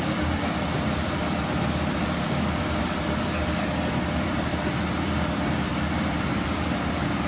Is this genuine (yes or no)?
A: no